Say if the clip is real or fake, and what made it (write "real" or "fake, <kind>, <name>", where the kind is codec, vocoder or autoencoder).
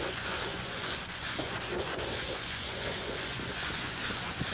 fake, vocoder, Vocos